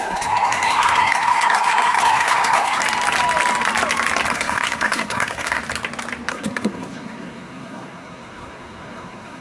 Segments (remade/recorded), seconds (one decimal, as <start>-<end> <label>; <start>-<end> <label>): 0.0-2.8 remade; 2.8-4.3 recorded; 4.3-5.6 remade; 5.6-6.3 recorded; 6.3-9.4 remade